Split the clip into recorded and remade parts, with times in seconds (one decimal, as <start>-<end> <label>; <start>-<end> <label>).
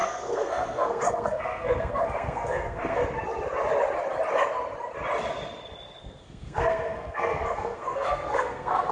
0.0-3.0 remade; 3.0-6.0 recorded; 6.0-8.9 remade